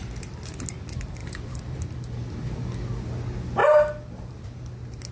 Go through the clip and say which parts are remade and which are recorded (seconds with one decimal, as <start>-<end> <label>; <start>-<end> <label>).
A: 0.0-1.2 recorded; 1.2-1.8 remade; 1.8-5.1 recorded